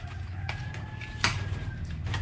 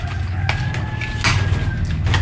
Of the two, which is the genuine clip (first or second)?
second